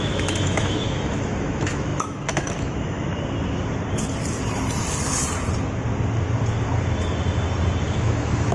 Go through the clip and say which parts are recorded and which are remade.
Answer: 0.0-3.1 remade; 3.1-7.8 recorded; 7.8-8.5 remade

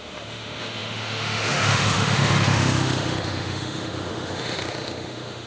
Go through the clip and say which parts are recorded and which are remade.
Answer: 0.0-5.5 remade

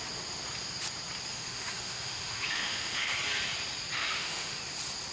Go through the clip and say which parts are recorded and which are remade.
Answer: 0.0-1.3 recorded; 1.3-3.1 remade; 3.1-4.0 recorded; 4.0-4.6 remade; 4.6-5.1 recorded

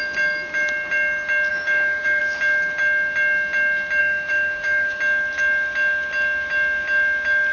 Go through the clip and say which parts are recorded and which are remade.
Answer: 0.0-1.5 recorded; 1.5-2.2 remade; 2.2-4.0 recorded; 4.0-5.0 remade; 5.0-7.5 recorded

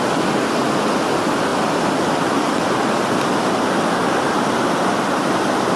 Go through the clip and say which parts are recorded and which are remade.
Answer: 0.0-5.8 recorded

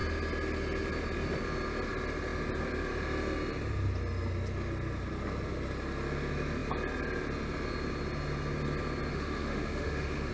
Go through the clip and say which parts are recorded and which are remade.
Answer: 0.0-9.1 recorded; 9.1-10.3 remade

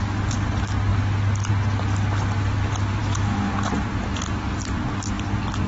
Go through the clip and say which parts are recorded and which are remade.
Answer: 0.0-3.0 recorded; 3.0-3.5 remade; 3.5-5.7 recorded

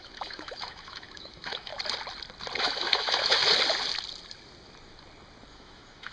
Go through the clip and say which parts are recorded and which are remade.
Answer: 0.0-1.7 remade; 1.7-2.6 recorded; 2.6-3.4 remade; 3.4-5.5 recorded; 5.5-6.1 remade